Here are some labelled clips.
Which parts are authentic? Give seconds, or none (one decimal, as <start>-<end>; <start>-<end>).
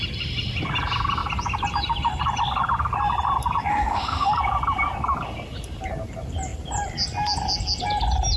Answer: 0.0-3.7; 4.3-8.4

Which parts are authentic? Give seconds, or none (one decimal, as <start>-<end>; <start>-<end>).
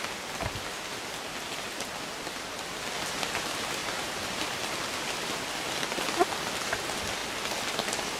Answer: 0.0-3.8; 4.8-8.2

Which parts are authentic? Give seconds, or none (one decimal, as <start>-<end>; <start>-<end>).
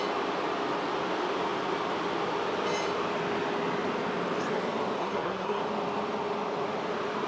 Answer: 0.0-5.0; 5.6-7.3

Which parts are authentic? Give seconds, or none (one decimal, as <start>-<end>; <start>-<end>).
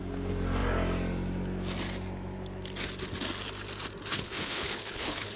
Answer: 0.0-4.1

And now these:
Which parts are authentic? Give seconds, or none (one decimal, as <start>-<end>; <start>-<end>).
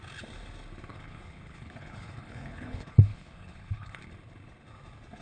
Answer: 0.0-0.9; 4.0-5.2